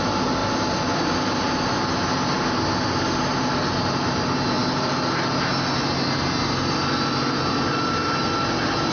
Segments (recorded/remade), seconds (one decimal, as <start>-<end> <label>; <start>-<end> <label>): 0.0-8.9 recorded